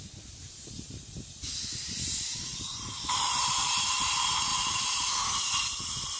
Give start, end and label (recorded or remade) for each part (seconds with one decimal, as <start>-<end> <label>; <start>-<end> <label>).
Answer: 0.0-0.4 recorded; 0.4-4.1 remade; 4.1-4.5 recorded; 4.5-5.1 remade; 5.1-6.2 recorded